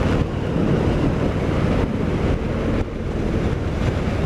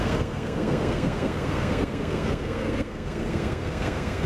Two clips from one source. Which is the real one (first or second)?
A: first